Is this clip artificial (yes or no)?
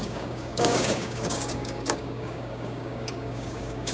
yes